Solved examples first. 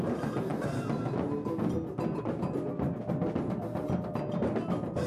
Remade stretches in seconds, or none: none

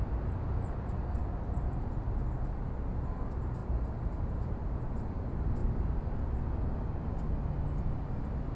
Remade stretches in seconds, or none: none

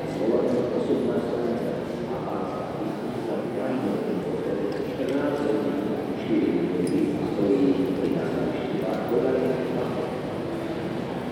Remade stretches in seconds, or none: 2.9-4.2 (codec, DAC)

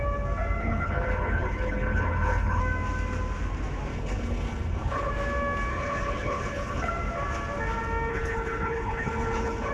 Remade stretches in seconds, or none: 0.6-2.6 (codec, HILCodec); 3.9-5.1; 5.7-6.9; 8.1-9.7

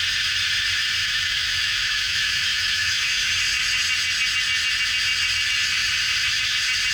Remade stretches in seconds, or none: 1.0-3.3 (autoencoder, DAC-VAE)